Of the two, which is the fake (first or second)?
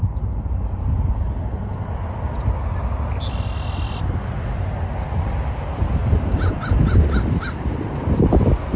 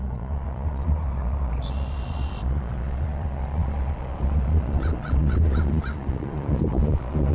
second